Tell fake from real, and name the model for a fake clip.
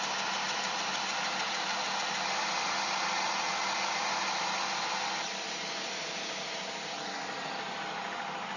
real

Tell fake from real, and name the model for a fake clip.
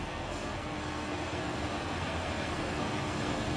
fake, codec, SNAC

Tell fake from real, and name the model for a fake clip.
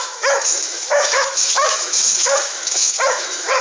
fake, autoencoder, DAC-VAE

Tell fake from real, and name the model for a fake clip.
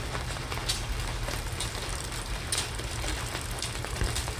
real